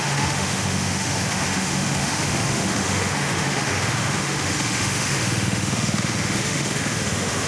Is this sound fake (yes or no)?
yes